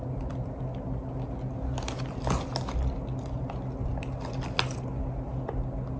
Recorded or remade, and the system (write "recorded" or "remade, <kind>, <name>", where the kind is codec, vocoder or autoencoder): recorded